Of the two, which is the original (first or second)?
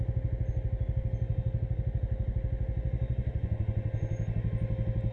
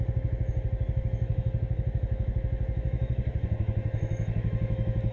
first